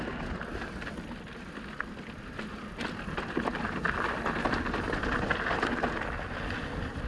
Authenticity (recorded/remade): recorded